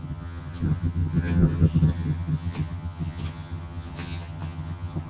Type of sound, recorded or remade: remade